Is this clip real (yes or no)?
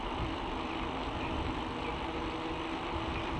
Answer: yes